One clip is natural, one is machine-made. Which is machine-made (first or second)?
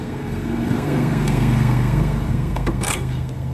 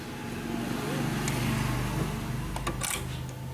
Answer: first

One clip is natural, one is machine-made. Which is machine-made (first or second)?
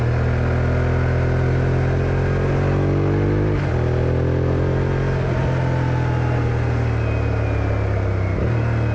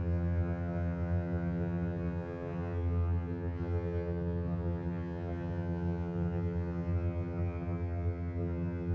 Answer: second